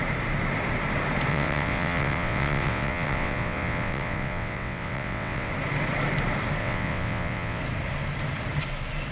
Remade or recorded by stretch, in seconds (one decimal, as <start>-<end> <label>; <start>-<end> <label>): 0.0-1.3 recorded; 1.3-5.5 remade; 5.5-6.6 recorded; 6.6-7.6 remade; 7.6-9.1 recorded